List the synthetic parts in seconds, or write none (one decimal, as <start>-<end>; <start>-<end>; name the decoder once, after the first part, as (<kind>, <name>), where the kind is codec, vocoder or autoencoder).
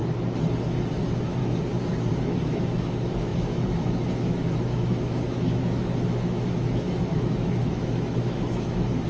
0.9-1.4 (autoencoder, DAC-VAE); 2.1-9.1